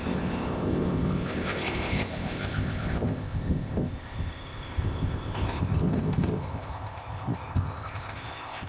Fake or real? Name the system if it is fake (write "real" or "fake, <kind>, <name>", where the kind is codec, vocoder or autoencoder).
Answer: fake, codec, ZipCodec